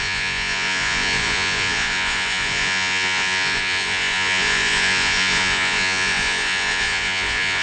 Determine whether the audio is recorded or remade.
remade